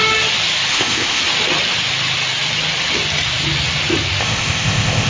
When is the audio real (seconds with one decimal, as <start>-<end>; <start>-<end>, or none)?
0.0-0.7; 1.2-4.2